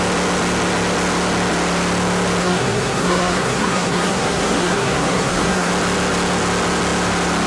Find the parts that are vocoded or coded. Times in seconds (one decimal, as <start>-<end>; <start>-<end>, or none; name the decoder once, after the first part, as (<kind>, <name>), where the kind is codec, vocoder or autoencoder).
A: 2.4-5.7 (codec, SNAC)